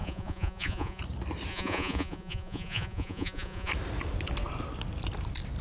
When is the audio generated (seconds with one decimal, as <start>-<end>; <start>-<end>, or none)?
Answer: 0.0-1.0; 1.5-3.7